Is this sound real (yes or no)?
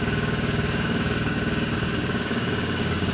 no